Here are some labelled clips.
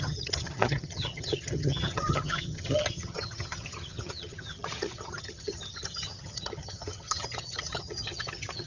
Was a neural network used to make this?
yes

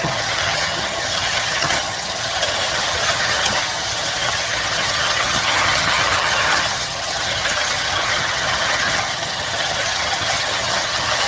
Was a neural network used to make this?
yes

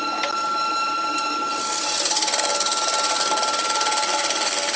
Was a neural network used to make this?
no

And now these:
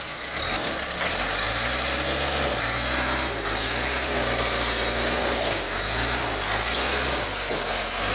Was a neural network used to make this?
no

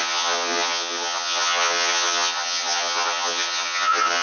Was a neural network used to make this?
yes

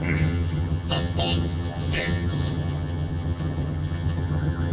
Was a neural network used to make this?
yes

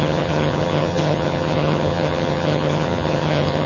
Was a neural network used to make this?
yes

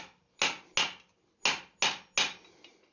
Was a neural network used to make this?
no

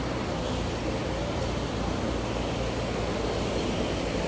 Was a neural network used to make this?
no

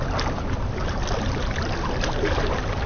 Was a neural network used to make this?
no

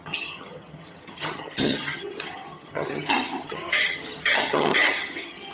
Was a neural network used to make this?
yes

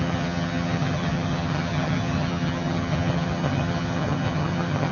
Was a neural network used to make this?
yes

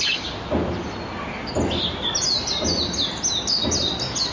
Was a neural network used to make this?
no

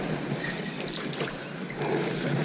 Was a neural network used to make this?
no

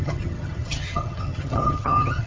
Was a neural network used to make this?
yes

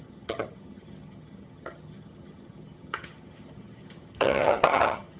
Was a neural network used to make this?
yes